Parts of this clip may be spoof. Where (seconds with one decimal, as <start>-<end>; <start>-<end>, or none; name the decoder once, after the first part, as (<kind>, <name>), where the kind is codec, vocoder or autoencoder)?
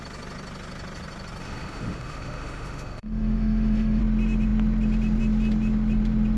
1.4-4.0 (autoencoder, DAC-VAE)